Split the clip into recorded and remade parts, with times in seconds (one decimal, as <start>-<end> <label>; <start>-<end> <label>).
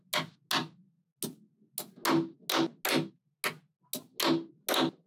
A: 0.0-5.1 recorded